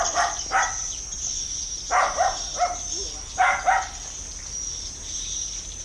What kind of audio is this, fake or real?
real